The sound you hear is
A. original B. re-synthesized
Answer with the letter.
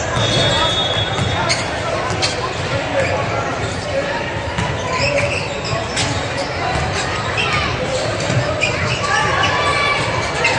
A